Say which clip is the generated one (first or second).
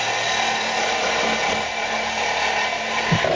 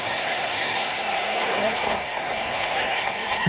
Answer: second